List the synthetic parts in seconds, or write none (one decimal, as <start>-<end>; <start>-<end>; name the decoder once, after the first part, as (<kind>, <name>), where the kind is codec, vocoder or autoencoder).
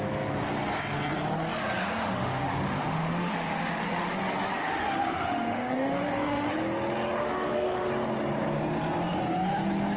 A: 1.8-4.1 (autoencoder, DAC-VAE); 4.6-6.5; 7.2-7.9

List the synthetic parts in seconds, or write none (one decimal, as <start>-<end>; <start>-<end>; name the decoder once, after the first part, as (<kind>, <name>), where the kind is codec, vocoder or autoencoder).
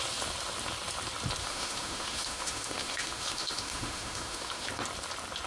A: 1.4-4.7 (autoencoder, DAC-VAE)